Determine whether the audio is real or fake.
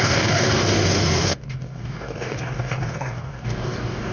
fake